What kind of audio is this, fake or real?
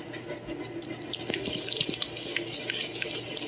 real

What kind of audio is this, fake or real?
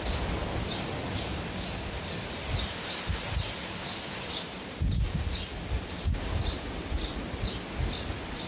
real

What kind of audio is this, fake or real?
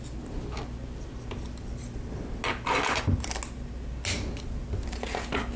real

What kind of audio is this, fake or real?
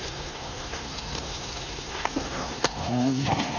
fake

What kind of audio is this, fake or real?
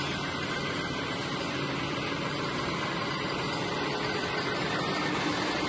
real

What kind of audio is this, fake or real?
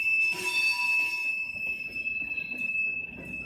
real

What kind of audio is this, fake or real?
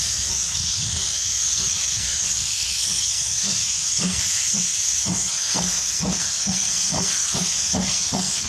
fake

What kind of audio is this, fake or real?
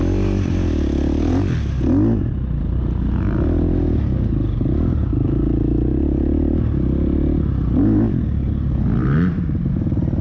real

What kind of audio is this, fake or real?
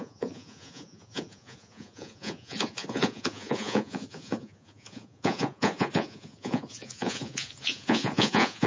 fake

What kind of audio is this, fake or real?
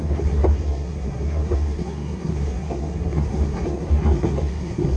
fake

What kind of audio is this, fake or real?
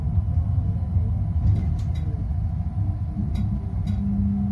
real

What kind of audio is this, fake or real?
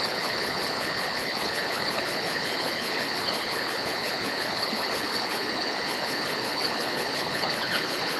fake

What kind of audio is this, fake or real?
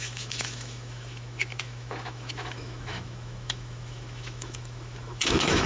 fake